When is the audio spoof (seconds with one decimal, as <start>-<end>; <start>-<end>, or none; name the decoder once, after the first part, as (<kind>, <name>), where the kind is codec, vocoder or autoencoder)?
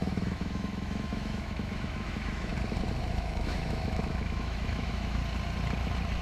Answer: 0.0-2.5 (autoencoder, DAC-VAE); 3.1-5.2